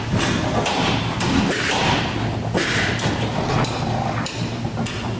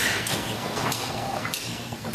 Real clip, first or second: first